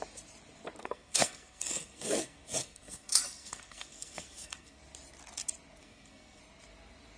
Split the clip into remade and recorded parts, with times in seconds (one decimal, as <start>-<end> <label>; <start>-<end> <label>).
0.0-0.8 recorded; 0.8-4.8 remade; 4.8-5.8 recorded; 5.8-6.4 remade; 6.4-7.2 recorded